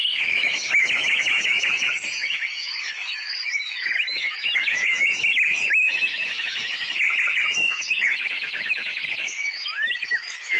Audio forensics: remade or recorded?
remade